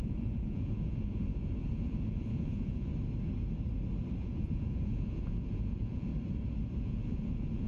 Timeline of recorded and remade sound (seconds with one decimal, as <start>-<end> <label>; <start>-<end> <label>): 0.0-2.9 remade; 2.9-4.2 recorded; 4.2-6.1 remade; 6.1-6.8 recorded; 6.8-7.7 remade